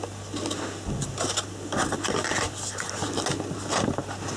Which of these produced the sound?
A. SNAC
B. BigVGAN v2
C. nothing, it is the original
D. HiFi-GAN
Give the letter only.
C